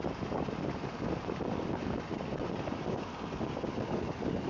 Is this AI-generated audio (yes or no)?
no